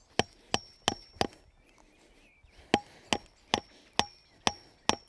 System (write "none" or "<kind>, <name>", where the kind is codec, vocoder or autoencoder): none